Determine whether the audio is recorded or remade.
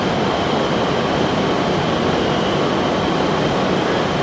recorded